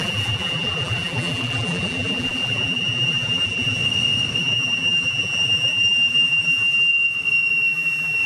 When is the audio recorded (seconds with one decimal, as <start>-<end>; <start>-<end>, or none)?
3.8-4.4; 6.9-7.5